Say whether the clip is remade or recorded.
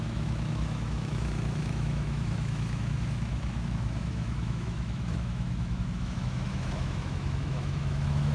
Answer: remade